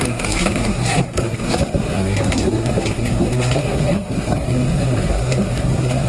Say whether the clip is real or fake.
fake